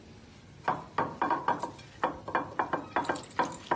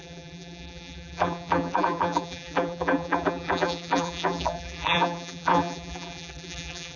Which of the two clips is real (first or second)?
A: first